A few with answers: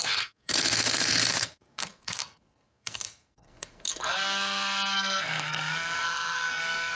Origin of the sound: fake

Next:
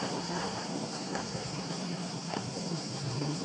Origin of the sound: fake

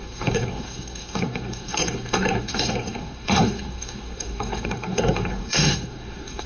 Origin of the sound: fake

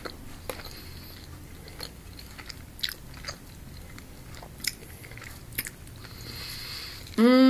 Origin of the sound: real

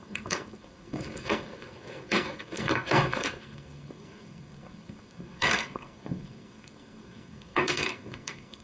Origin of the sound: fake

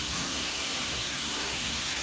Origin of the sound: fake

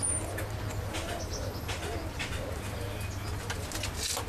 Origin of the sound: real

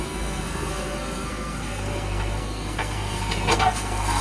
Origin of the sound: fake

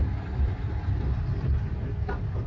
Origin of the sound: real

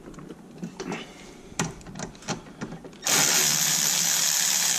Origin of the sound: real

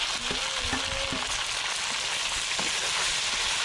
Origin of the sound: real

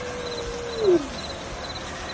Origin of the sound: real